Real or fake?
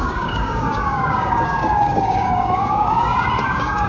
fake